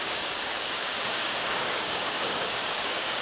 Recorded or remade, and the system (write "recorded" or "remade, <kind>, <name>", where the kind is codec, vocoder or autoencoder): remade, codec, DAC